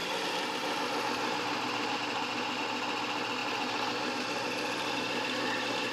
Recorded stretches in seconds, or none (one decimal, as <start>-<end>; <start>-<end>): 0.0-5.9